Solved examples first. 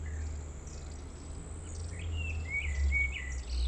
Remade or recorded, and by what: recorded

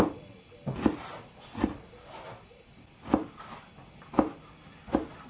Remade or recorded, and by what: recorded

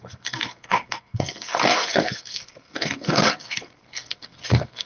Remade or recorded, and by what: remade, codec, SNAC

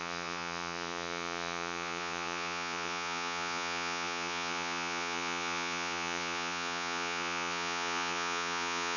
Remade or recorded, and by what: remade, vocoder, Vocos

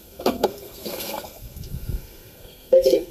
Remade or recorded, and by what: remade, codec, SNAC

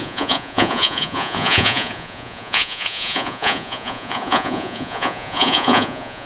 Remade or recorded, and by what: remade, vocoder, Vocos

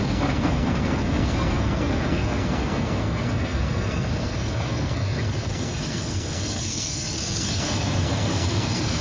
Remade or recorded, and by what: remade, codec, SNAC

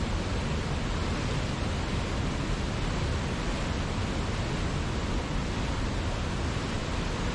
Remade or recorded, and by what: recorded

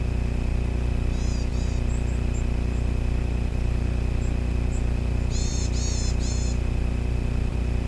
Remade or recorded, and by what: recorded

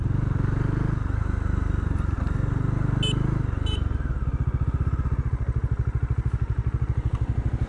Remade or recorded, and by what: recorded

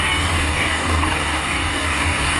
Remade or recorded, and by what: remade, codec, DAC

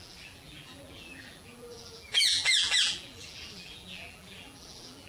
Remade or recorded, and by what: remade, vocoder, BigVGAN v2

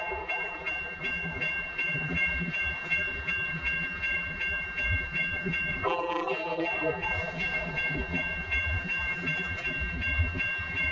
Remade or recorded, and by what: remade, vocoder, BigVGAN v2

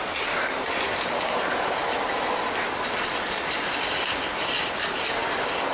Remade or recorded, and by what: recorded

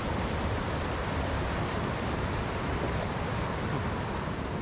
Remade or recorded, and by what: recorded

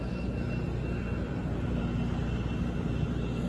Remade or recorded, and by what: recorded